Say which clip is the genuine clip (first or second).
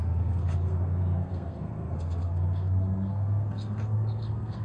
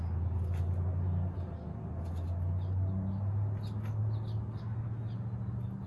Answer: second